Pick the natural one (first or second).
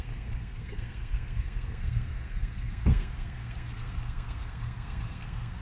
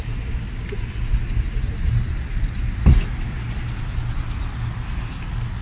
second